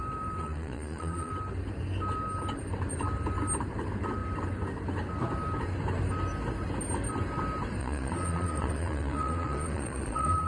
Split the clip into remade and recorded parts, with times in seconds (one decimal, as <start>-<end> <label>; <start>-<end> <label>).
0.0-0.4 recorded; 0.4-1.3 remade; 1.3-7.8 recorded; 7.8-10.5 remade